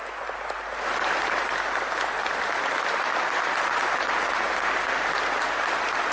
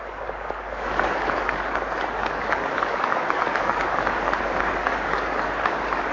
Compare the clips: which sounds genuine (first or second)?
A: first